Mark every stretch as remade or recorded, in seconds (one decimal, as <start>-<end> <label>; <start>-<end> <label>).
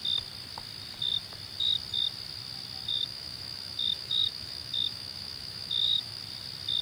0.0-2.9 recorded; 2.9-6.2 remade; 6.2-6.8 recorded